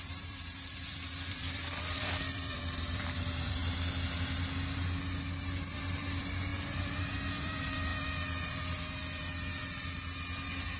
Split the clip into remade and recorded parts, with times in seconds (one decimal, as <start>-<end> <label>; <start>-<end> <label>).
0.0-3.6 remade; 3.6-6.0 recorded; 6.0-6.5 remade; 6.5-7.0 recorded; 7.0-7.9 remade; 7.9-10.8 recorded

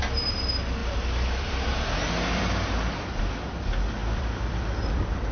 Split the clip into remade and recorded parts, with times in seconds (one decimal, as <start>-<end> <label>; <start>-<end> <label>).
0.0-0.8 recorded; 0.8-3.2 remade; 3.2-4.0 recorded; 4.0-5.3 remade

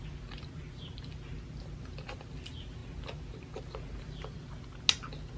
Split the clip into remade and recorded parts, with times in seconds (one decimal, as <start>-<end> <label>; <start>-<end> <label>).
0.0-5.4 recorded